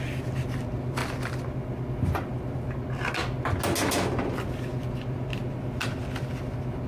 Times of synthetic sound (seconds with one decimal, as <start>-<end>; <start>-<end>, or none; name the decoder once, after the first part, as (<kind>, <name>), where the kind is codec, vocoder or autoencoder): none